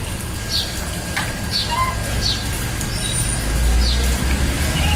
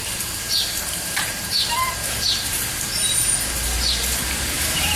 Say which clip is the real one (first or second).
first